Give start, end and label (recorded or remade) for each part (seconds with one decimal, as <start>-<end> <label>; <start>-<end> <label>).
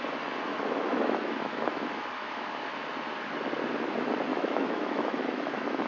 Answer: 0.0-0.5 recorded; 0.5-2.7 remade; 2.7-4.3 recorded; 4.3-5.9 remade